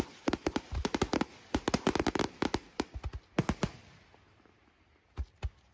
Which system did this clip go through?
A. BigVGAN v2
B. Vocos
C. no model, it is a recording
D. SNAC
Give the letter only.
C